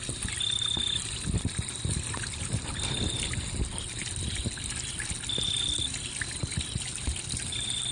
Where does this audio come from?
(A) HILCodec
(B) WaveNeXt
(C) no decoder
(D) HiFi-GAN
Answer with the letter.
C